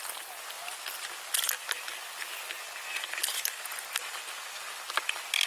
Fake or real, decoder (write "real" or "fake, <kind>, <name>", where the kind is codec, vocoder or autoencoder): real